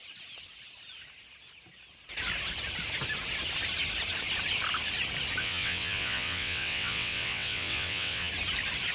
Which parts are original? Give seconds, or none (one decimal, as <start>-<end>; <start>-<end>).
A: 0.0-5.4; 8.3-8.9